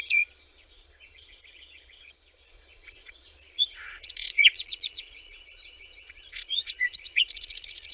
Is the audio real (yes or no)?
no